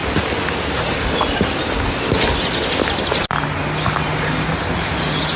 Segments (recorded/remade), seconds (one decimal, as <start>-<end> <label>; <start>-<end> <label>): 0.0-5.4 recorded